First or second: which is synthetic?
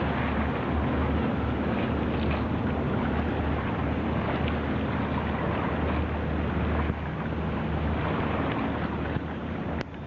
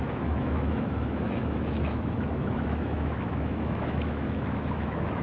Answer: second